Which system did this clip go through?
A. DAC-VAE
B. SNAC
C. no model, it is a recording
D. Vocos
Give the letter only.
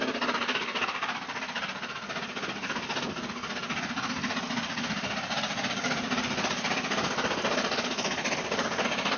C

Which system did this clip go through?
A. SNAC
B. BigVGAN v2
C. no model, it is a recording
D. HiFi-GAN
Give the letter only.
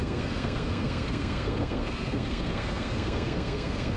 A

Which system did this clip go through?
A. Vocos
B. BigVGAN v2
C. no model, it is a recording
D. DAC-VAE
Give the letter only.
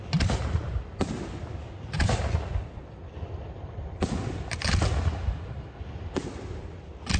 C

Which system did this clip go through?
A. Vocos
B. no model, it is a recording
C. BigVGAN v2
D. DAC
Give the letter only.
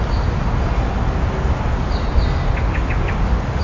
B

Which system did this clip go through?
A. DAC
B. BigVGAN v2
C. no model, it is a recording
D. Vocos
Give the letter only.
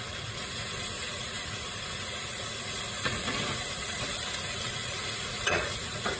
D